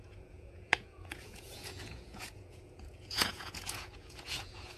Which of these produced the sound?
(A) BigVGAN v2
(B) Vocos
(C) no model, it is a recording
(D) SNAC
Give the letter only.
B